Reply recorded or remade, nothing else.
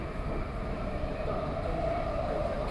recorded